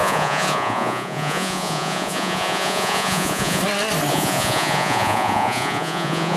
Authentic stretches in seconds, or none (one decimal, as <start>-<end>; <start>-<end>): 3.6-4.1